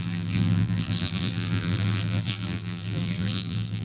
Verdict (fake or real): fake